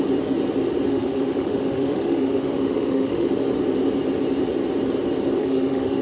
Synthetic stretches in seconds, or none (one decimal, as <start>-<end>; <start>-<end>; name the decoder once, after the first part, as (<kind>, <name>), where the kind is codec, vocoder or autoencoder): 0.9-3.3 (autoencoder, DAC-VAE); 5.4-6.0